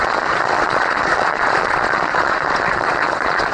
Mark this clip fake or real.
fake